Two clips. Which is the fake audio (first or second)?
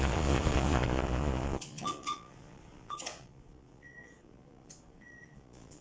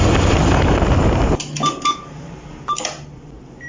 first